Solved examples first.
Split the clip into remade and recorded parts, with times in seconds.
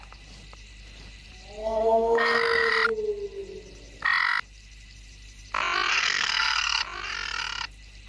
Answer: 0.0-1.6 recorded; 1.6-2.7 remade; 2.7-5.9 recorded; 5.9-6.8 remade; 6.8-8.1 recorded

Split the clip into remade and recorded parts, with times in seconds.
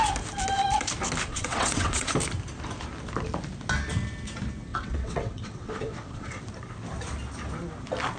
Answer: 0.0-1.3 recorded; 1.3-2.1 remade; 2.1-4.7 recorded; 4.7-6.4 remade; 6.4-8.2 recorded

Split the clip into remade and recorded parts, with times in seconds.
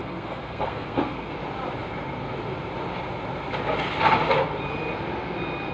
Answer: 0.0-1.3 remade; 1.3-5.7 recorded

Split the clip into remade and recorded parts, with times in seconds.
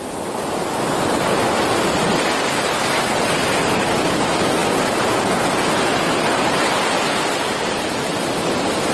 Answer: 0.0-8.9 recorded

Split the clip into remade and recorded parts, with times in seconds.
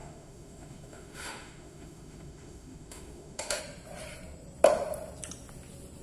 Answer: 0.0-3.6 remade; 3.6-6.0 recorded